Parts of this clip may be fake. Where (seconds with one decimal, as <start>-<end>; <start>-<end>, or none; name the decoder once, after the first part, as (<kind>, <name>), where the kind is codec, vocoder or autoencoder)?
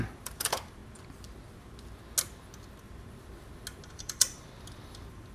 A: 0.0-0.8 (vocoder, BigVGAN v2); 3.9-5.3